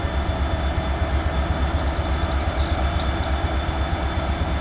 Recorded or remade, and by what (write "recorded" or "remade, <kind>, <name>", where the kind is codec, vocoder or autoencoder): recorded